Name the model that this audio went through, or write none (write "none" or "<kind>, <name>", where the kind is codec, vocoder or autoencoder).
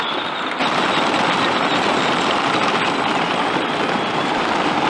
none